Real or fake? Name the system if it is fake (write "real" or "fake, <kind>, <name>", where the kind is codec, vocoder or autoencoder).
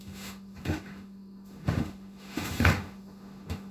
fake, autoencoder, DAC-VAE